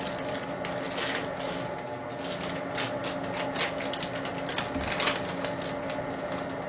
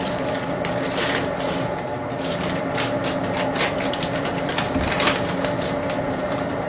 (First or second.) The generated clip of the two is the second